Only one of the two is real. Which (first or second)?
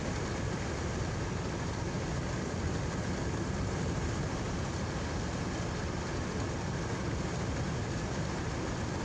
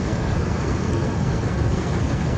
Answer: first